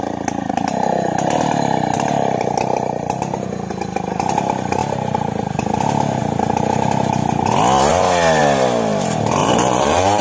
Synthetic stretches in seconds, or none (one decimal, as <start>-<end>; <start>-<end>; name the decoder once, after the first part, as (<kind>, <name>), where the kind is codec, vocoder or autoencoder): 9.4-10.2 (vocoder, BigVGAN v2)